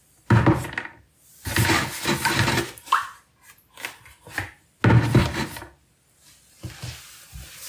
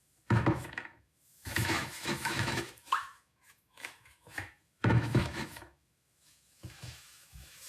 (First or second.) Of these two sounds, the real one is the first